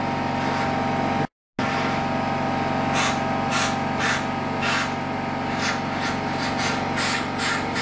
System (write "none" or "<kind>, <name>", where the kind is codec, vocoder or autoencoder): none